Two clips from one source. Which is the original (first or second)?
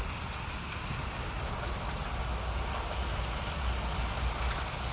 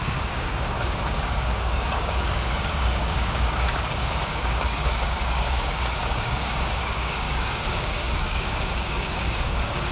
first